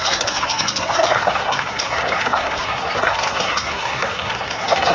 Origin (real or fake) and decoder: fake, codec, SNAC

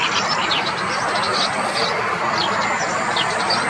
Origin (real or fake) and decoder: real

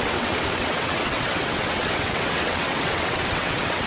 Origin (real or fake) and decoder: fake, vocoder, WaveNeXt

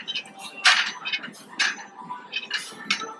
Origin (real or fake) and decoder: real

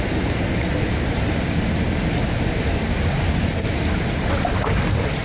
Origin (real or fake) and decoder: real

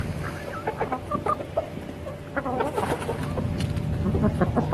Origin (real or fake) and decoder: real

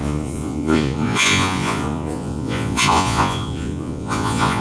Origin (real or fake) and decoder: fake, vocoder, Vocos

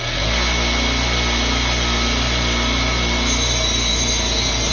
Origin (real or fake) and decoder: real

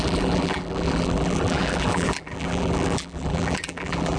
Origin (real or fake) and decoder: fake, vocoder, BigVGAN v2